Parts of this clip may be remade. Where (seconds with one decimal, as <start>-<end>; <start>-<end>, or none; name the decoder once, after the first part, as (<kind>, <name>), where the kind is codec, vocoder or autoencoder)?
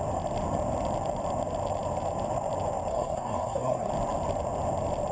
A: 2.9-3.9 (codec, SNAC)